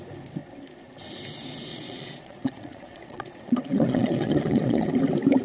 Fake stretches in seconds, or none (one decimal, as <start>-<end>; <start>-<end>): 1.7-4.9

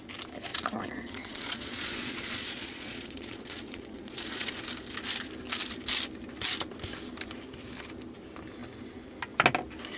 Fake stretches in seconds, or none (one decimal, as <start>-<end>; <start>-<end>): 0.5-4.5

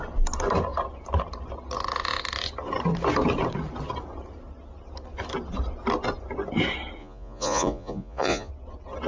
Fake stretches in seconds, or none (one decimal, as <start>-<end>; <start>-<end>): 7.0-8.5

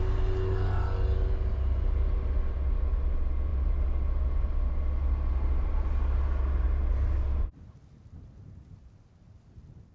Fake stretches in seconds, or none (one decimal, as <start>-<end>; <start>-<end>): none

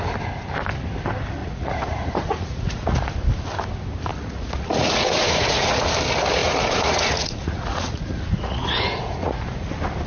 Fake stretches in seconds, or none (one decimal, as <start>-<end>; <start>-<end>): 1.4-3.1; 4.1-5.9; 6.4-9.7

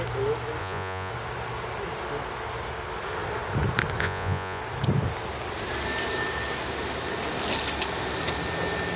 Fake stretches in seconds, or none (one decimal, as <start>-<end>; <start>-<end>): 0.6-1.1; 4.0-4.6